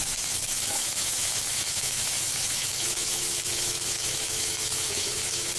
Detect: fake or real fake